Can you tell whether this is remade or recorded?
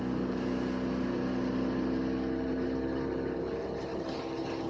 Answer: recorded